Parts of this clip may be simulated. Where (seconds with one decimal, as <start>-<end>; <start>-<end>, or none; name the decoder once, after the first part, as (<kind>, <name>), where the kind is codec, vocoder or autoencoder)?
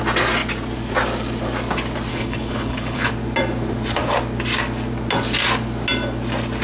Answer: 2.1-3.1 (codec, HILCodec)